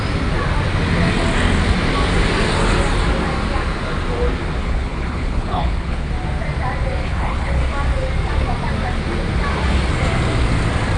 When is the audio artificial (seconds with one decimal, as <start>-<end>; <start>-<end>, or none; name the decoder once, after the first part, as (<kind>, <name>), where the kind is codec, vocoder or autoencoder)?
4.6-6.1 (codec, HILCodec); 7.0-7.6